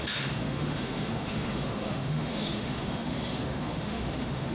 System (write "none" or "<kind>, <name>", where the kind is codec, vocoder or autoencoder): autoencoder, DAC-VAE